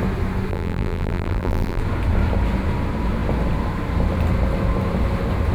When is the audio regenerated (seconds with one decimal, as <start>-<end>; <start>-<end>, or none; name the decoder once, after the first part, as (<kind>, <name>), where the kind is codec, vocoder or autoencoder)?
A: 0.5-1.8 (vocoder, BigVGAN v2)